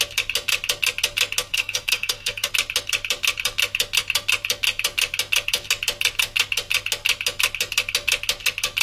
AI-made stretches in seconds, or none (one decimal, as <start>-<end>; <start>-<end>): 1.5-2.5